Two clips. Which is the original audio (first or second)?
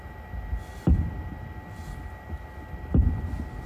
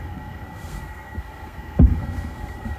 first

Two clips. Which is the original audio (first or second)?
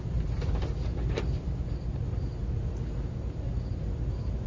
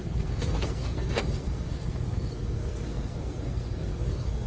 first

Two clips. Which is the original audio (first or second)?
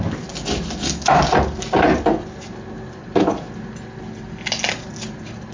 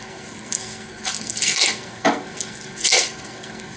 first